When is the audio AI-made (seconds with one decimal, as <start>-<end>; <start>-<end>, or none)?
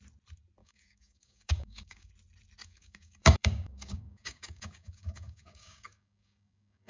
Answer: 0.6-2.1; 2.6-6.9